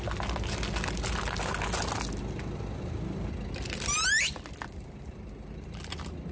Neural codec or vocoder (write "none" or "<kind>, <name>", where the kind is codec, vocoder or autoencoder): none